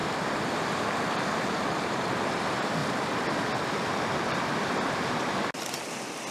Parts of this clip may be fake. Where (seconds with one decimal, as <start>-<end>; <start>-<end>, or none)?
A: 0.0-2.4; 2.8-4.9

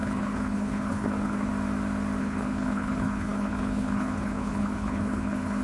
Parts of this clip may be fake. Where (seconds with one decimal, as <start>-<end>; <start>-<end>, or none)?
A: 0.0-1.5; 2.2-5.6

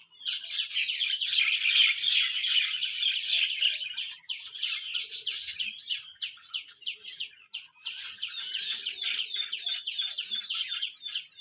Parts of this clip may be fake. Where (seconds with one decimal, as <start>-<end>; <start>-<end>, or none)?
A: none

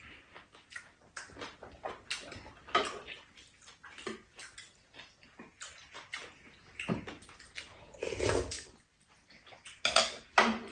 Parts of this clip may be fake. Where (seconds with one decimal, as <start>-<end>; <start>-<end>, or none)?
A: none

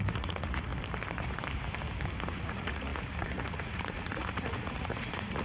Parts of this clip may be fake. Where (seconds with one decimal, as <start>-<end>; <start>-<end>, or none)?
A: 0.0-0.7; 2.3-5.4